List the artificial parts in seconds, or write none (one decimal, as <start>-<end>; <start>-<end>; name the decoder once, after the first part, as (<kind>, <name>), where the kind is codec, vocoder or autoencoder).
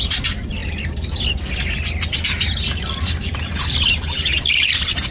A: none